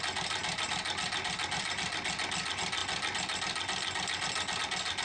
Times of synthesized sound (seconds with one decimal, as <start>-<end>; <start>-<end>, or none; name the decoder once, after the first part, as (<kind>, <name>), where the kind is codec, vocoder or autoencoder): none